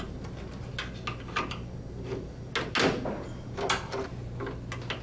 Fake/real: real